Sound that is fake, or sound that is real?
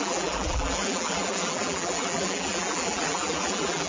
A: fake